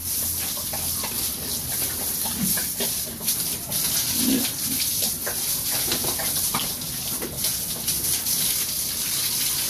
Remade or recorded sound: recorded